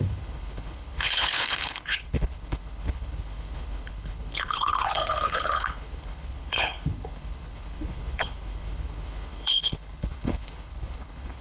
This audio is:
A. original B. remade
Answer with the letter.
B